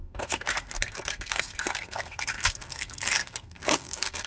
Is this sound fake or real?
fake